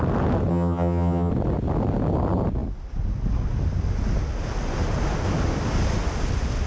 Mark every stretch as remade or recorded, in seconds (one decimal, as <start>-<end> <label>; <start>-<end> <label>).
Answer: 0.0-0.5 recorded; 0.5-1.3 remade; 1.3-6.7 recorded